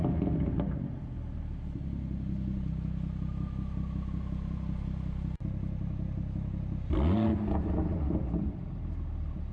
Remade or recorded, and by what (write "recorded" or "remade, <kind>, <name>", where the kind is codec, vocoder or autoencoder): recorded